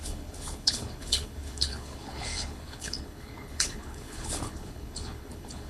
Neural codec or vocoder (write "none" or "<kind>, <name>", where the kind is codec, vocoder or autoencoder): codec, HILCodec